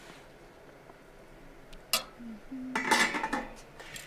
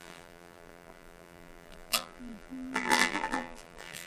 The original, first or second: first